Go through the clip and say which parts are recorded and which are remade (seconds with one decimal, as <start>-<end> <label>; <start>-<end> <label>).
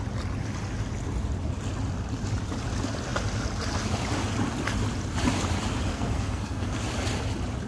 0.0-5.9 recorded; 5.9-6.8 remade; 6.8-7.7 recorded